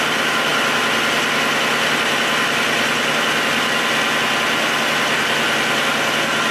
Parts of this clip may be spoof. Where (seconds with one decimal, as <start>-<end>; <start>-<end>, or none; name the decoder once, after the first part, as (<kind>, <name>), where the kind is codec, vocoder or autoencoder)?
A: none